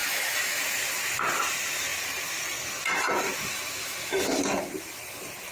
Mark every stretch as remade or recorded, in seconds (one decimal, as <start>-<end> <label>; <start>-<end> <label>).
0.0-0.6 remade; 0.6-3.8 recorded; 3.8-4.4 remade; 4.4-5.5 recorded